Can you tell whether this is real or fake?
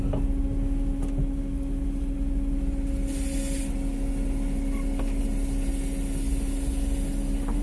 real